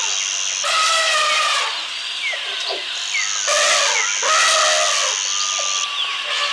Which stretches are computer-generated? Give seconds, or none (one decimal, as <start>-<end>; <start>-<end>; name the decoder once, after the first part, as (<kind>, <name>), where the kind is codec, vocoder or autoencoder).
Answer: none